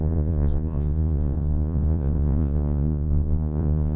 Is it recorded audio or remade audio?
remade